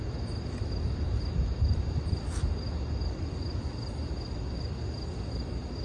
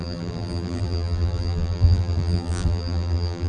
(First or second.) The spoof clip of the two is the second